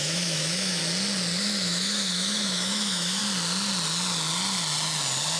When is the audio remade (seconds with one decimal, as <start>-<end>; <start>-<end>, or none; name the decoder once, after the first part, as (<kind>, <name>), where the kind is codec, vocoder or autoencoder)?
0.0-0.8 (autoencoder, DAC-VAE); 1.4-3.2